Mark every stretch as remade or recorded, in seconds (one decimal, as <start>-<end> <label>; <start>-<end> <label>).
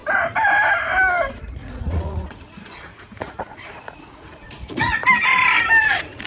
0.0-1.5 recorded; 1.5-5.0 remade; 5.0-5.8 recorded; 5.8-6.3 remade